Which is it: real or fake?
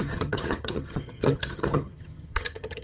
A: fake